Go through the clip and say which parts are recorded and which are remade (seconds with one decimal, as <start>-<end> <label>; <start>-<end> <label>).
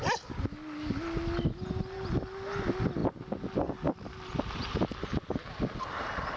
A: 0.0-6.4 recorded